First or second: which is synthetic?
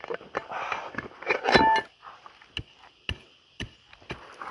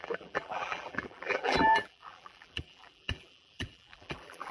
second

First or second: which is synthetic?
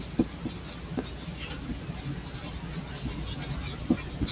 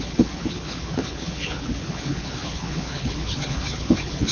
second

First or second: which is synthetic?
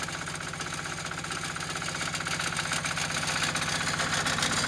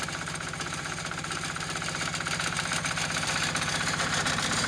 second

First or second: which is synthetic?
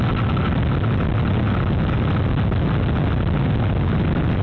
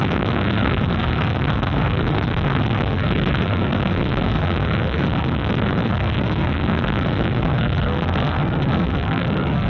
second